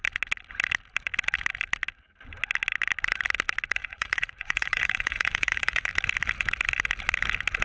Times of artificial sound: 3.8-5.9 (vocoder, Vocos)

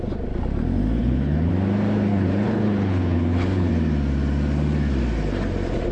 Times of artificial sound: 1.0-1.5 (codec, HILCodec); 2.1-3.7

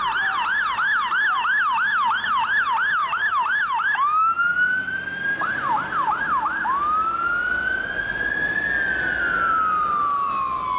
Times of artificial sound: none

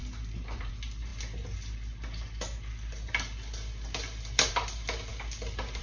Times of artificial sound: none

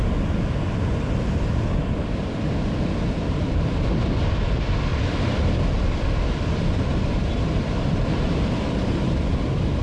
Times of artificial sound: 4.9-8.3 (vocoder, BigVGAN v2)

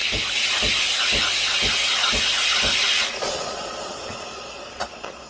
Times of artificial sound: 3.2-5.3 (vocoder, Vocos)